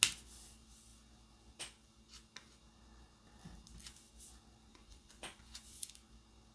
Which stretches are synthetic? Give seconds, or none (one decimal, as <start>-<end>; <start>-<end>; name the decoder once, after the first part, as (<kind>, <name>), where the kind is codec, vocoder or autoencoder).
4.7-5.9 (vocoder, Vocos)